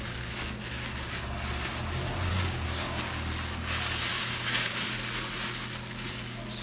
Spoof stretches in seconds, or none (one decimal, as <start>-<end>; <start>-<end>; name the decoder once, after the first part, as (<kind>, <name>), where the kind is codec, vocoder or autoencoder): 2.3-3.1 (codec, DAC); 4.1-4.8